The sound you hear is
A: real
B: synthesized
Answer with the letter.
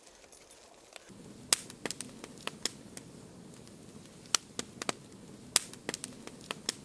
A